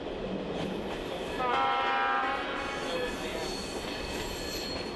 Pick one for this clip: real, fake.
real